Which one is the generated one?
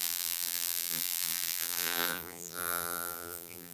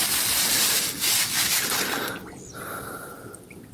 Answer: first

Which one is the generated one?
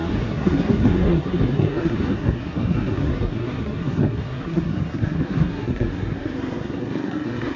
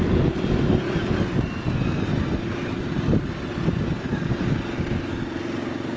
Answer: first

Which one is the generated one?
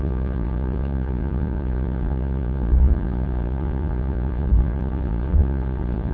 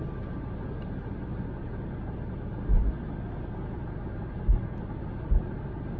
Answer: first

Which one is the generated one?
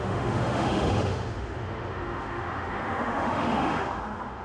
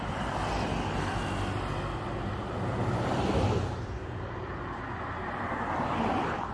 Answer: first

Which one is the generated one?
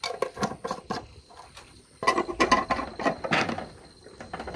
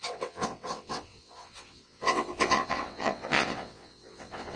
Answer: second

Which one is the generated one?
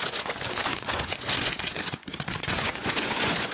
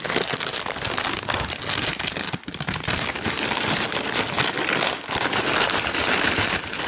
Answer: first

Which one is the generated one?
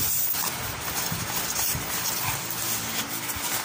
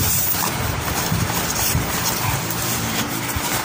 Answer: second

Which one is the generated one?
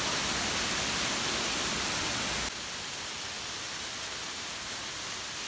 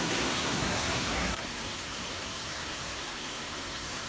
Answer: second